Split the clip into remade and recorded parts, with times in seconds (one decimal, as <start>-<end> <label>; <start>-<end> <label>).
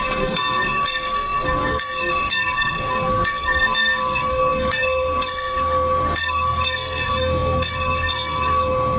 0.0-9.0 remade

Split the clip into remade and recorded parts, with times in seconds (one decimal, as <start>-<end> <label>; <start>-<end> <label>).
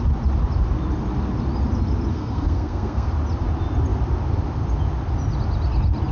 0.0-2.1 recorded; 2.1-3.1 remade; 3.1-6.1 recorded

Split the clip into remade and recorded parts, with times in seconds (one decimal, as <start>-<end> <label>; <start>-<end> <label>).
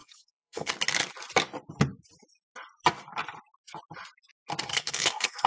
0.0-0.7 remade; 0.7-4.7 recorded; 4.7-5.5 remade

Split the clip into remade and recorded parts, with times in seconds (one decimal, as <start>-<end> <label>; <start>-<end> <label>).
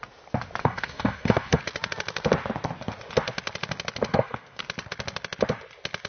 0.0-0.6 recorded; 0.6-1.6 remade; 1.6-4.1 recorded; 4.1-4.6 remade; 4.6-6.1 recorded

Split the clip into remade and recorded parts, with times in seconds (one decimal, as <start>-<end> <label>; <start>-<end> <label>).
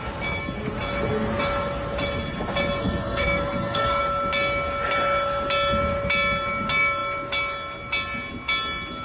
0.0-2.8 recorded; 2.8-4.0 remade; 4.0-9.0 recorded